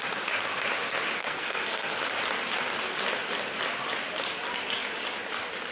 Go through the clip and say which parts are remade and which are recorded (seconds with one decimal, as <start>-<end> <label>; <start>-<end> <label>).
0.0-1.2 recorded; 1.2-2.0 remade; 2.0-5.7 recorded